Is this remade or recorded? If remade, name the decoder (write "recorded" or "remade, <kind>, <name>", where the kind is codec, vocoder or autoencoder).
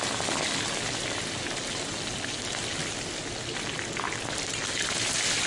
recorded